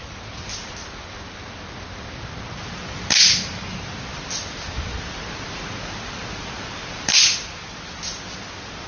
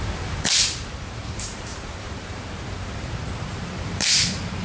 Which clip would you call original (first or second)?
first